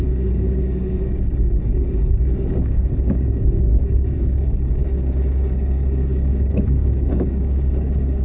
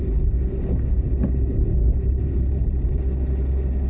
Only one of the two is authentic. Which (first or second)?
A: second